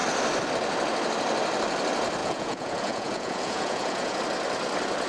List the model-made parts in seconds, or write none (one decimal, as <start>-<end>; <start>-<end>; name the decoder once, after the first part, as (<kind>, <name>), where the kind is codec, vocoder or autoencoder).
2.2-4.2 (vocoder, Vocos)